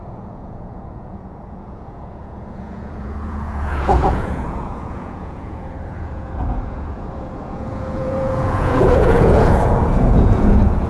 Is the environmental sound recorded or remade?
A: remade